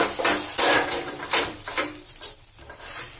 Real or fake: real